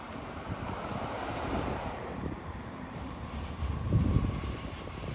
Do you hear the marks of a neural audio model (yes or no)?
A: yes